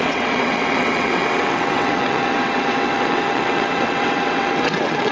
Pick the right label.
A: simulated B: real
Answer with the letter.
A